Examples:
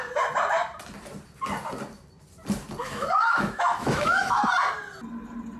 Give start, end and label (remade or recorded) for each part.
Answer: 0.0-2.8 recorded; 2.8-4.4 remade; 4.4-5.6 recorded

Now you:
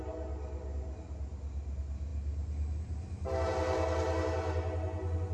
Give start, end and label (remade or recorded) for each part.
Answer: 0.0-5.3 recorded

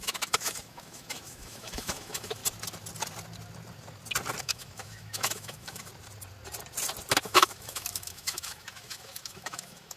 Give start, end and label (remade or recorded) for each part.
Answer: 0.0-2.4 remade; 2.4-4.4 recorded; 4.4-5.9 remade; 5.9-7.1 recorded; 7.1-10.0 remade

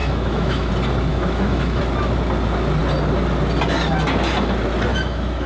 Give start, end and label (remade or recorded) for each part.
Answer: 0.0-0.7 remade; 0.7-1.1 recorded; 1.1-1.8 remade; 1.8-4.9 recorded; 4.9-5.5 remade

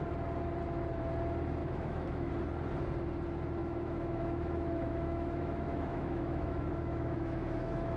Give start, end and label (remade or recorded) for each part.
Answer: 0.0-1.6 recorded; 1.6-2.3 remade; 2.3-3.6 recorded; 3.6-8.0 remade